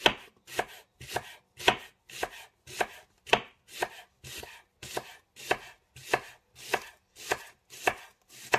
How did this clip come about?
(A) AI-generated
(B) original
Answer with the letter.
B